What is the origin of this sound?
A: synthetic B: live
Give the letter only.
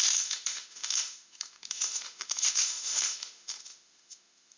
A